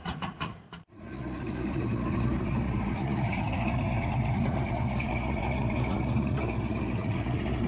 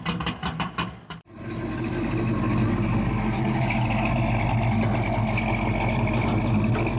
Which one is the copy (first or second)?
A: first